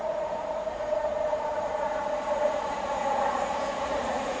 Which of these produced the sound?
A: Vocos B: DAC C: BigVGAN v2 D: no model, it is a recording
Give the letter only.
A